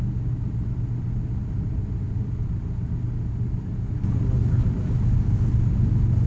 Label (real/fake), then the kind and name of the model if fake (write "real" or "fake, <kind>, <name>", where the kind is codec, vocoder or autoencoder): real